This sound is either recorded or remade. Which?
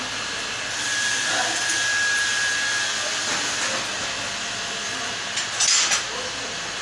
recorded